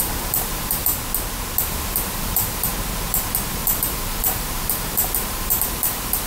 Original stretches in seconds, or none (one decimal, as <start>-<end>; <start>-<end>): 0.9-1.6; 2.7-3.5